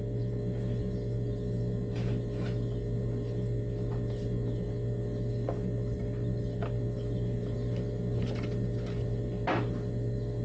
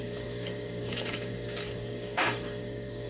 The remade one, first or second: second